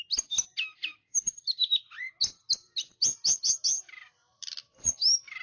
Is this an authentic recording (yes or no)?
yes